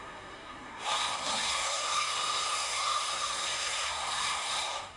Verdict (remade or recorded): remade